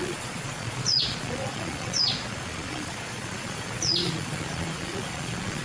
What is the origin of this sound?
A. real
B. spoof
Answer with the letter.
B